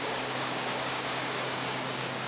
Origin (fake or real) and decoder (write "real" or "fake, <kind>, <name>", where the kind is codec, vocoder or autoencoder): fake, codec, DAC